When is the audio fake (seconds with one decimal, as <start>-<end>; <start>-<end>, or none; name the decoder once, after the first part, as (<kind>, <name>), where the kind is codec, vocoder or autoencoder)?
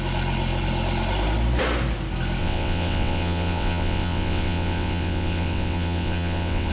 2.4-6.7 (vocoder, WaveNeXt)